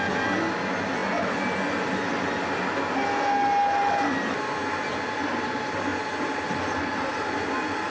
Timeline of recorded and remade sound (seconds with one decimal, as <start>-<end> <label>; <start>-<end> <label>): 0.0-7.9 recorded

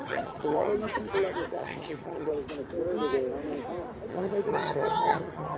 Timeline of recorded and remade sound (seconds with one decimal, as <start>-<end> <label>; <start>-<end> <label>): 0.0-0.7 remade; 0.7-1.5 recorded; 1.5-2.3 remade; 2.3-4.1 recorded; 4.1-5.6 remade

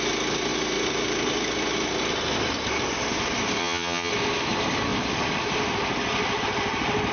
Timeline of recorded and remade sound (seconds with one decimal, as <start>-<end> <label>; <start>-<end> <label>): 0.0-3.6 recorded; 3.6-4.1 remade; 4.1-7.1 recorded

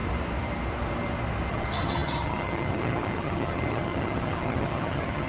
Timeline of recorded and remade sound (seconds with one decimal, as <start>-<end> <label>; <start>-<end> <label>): 0.0-1.5 recorded; 1.5-5.3 remade